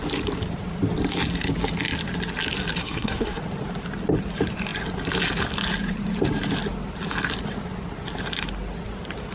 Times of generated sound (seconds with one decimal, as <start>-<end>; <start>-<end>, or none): 2.8-3.4